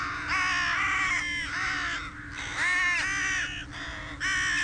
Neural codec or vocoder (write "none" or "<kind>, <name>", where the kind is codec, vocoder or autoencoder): none